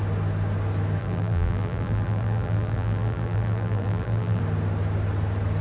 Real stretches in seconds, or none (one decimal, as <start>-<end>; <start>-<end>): 0.0-1.0; 4.4-5.6